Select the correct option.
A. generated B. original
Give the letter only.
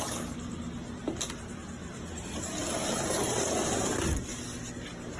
B